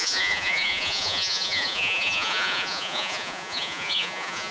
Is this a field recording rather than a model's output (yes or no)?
no